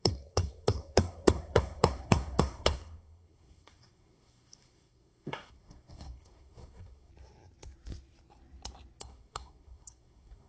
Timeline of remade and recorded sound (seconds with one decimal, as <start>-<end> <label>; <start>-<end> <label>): 0.0-7.1 remade; 7.1-9.0 recorded; 9.0-10.5 remade